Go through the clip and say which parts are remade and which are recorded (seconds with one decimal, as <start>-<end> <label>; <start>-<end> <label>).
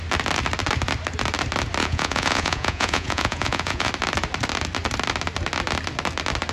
0.0-1.8 recorded; 1.8-3.9 remade; 3.9-6.5 recorded